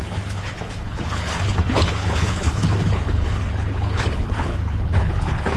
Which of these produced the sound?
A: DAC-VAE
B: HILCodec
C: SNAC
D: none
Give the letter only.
B